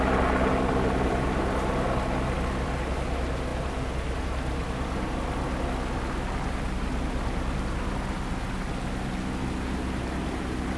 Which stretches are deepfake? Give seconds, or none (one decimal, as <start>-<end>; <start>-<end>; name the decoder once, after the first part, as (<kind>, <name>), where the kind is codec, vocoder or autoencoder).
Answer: none